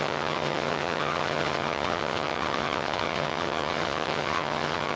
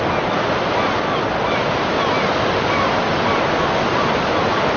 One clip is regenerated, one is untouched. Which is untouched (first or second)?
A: second